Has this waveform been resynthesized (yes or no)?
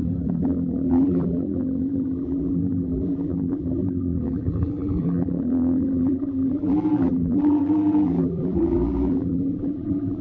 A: yes